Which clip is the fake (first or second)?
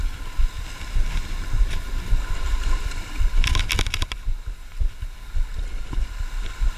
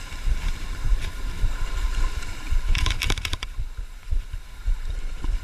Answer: second